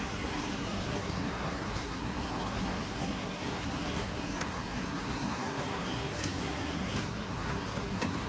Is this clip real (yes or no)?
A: no